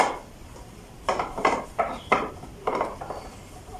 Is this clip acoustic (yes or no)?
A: yes